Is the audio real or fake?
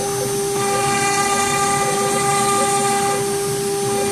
real